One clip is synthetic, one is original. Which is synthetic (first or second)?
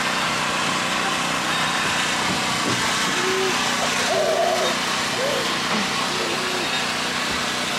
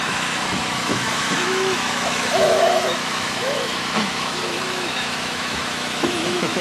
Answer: second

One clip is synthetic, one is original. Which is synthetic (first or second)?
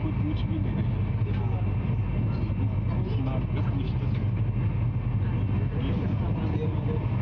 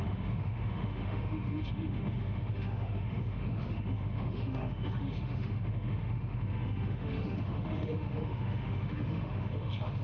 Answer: second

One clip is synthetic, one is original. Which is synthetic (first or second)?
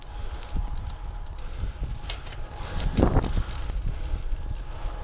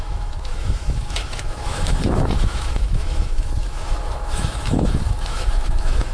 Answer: second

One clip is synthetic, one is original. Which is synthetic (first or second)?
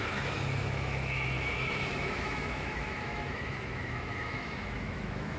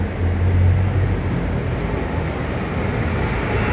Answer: first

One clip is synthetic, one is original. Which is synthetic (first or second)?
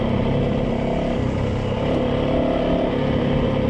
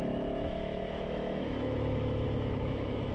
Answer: second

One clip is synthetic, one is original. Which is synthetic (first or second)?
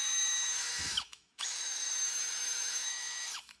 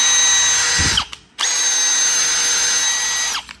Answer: first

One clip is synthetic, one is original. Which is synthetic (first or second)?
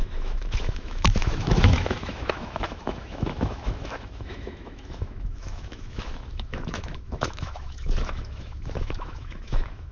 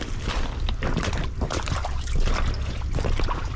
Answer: first